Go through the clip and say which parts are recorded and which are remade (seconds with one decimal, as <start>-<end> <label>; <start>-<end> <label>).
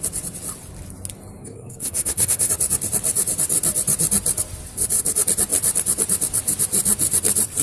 0.0-1.4 recorded; 1.4-2.5 remade; 2.5-7.6 recorded